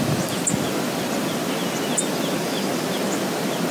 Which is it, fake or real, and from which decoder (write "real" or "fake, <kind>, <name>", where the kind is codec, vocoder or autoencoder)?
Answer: real